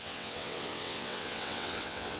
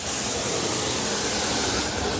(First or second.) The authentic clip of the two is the second